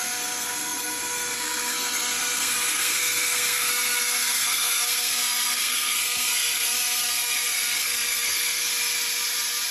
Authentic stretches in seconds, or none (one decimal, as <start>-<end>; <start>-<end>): 8.7-9.7